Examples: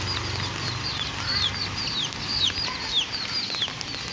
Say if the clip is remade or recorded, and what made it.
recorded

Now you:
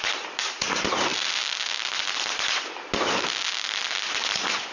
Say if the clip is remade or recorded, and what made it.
recorded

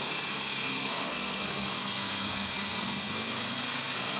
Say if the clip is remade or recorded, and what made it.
remade, codec, SNAC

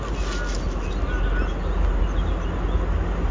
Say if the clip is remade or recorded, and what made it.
recorded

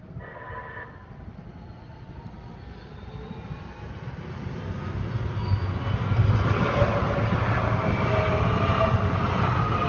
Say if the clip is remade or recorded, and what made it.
recorded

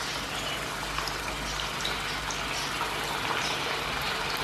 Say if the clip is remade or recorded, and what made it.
recorded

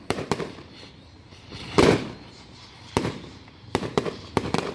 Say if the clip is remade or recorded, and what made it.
remade, vocoder, BigVGAN v2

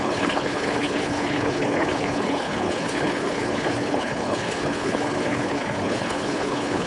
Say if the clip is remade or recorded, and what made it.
remade, codec, HILCodec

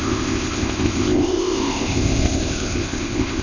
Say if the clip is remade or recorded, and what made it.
remade, codec, ZipCodec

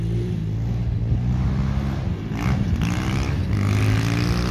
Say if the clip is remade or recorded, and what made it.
recorded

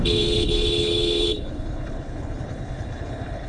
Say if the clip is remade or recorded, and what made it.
remade, codec, HILCodec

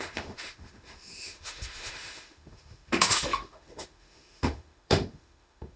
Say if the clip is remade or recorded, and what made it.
remade, autoencoder, DAC-VAE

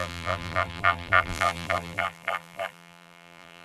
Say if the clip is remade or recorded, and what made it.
remade, vocoder, BigVGAN v2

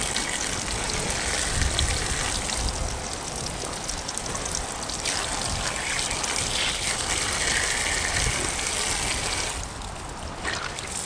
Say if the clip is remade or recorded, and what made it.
recorded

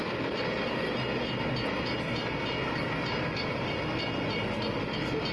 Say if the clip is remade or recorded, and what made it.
recorded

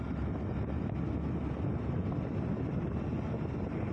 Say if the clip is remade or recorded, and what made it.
recorded